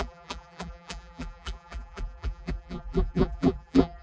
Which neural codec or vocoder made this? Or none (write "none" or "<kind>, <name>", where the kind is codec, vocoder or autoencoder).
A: vocoder, BigVGAN v2